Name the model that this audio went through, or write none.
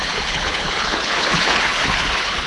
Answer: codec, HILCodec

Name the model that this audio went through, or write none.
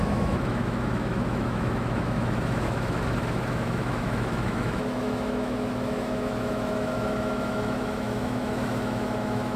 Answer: autoencoder, DAC-VAE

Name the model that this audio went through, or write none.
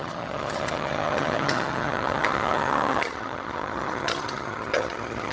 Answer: vocoder, HiFi-GAN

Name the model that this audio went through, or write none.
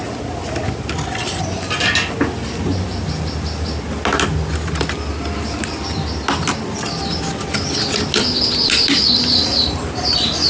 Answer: none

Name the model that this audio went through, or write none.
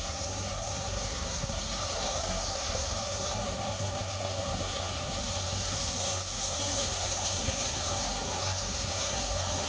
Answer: codec, SNAC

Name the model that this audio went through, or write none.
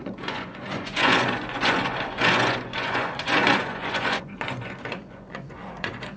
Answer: vocoder, Vocos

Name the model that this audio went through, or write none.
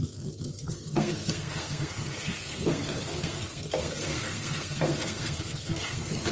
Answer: codec, SNAC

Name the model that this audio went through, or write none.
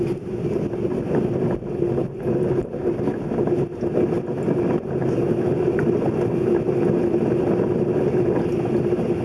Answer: none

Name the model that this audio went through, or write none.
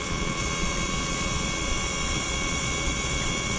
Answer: vocoder, Vocos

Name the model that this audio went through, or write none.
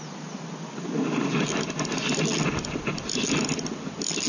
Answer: none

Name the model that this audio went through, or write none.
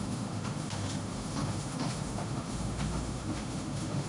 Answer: autoencoder, DAC-VAE